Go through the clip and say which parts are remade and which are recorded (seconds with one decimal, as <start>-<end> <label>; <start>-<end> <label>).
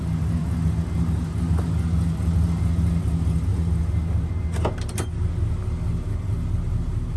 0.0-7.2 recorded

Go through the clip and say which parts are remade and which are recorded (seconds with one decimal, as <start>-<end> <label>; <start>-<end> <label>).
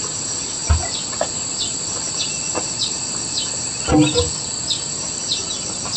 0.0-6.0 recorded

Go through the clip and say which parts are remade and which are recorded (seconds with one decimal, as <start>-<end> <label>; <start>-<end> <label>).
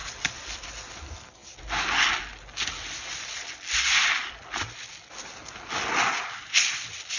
0.0-7.2 recorded